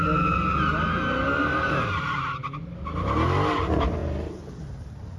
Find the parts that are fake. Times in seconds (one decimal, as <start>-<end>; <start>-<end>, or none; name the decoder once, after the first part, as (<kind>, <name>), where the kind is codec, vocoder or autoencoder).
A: 1.5-2.2 (vocoder, BigVGAN v2); 4.0-4.8